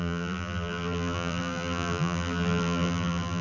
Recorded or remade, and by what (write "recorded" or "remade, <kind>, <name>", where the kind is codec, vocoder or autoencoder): remade, vocoder, BigVGAN v2